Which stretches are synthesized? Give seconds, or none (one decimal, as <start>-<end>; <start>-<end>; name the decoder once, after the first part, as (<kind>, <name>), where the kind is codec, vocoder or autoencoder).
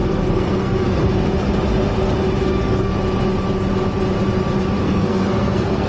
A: 0.0-1.0 (codec, SNAC); 2.4-2.9; 4.8-5.9